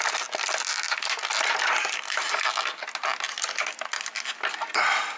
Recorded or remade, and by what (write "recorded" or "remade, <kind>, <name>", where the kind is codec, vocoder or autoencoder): recorded